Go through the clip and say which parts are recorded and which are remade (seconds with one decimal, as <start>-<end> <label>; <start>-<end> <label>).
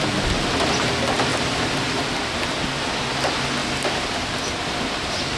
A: 0.0-5.4 recorded